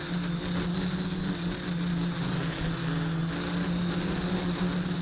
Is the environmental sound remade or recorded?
recorded